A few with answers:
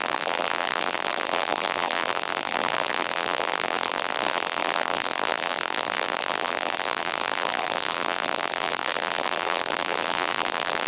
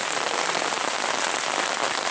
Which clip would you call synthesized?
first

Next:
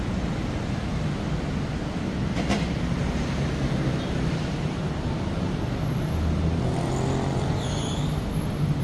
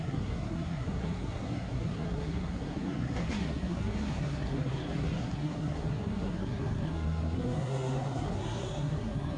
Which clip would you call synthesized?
second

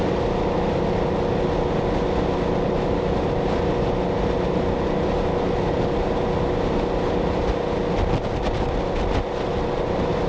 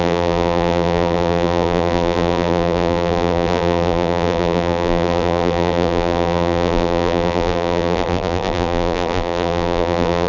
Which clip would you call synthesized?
second